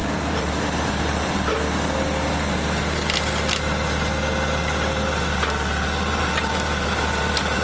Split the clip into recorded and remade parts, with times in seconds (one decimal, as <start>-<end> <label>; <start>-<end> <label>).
0.0-1.5 remade; 1.5-6.1 recorded; 6.1-7.6 remade

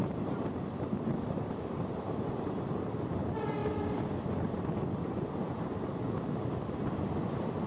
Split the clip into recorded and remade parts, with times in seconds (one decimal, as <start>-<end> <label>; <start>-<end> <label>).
0.0-1.6 remade; 1.6-7.7 recorded

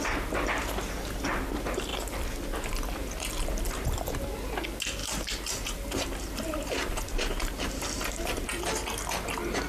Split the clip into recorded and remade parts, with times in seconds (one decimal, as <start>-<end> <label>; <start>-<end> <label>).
0.0-5.0 recorded; 5.0-8.6 remade; 8.6-9.7 recorded

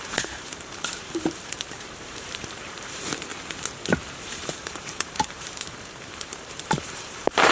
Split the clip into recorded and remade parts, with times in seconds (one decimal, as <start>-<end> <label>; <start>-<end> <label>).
0.0-3.3 remade; 3.3-4.2 recorded; 4.2-7.5 remade

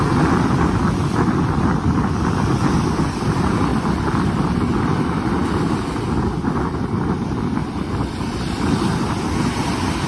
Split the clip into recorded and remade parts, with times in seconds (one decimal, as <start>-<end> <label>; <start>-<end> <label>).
0.0-3.7 recorded; 3.7-6.2 remade; 6.2-7.6 recorded; 7.6-9.4 remade; 9.4-10.1 recorded

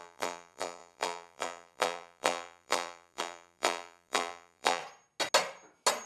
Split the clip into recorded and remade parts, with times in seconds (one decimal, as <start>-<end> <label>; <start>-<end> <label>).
0.0-4.8 remade; 4.8-6.1 recorded